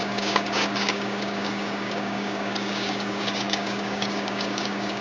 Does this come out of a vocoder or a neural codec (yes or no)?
yes